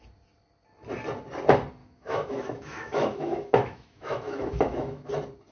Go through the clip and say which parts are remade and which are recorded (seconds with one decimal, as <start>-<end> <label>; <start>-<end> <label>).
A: 0.0-1.8 recorded; 1.8-5.1 remade; 5.1-5.5 recorded